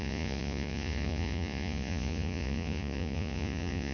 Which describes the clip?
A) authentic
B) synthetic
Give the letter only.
B